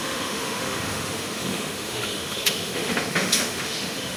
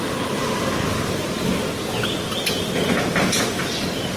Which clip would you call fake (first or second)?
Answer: first